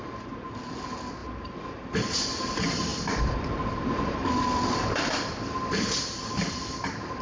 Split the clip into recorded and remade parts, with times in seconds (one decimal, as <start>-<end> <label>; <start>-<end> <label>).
0.0-2.9 recorded; 2.9-6.3 remade; 6.3-7.2 recorded